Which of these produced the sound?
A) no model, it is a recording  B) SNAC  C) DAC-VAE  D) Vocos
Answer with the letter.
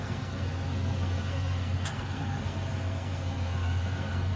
B